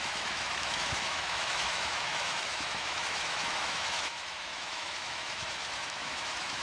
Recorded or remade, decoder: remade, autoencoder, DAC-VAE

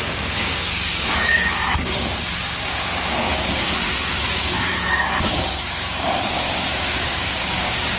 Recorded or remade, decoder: remade, codec, DAC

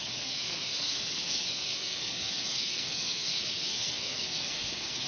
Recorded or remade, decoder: remade, codec, SNAC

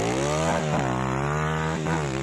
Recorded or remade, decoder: recorded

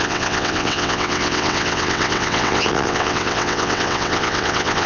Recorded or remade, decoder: remade, vocoder, WaveNeXt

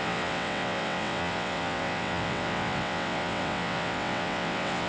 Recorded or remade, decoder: remade, vocoder, WaveNeXt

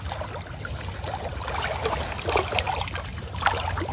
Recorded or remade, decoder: recorded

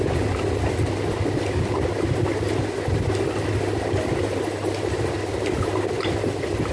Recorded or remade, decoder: recorded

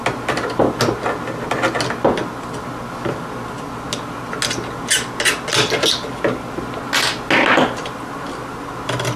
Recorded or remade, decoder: recorded